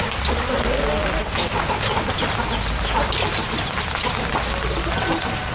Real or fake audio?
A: real